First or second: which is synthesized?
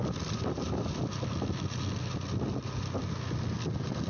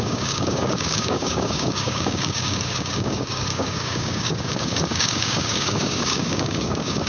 second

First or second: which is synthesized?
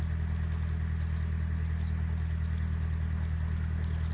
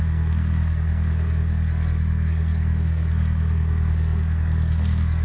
second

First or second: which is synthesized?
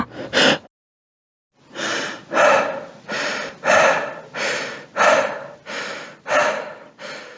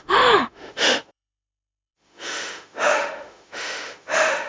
second